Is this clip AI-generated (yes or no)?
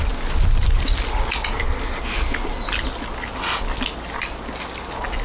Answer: no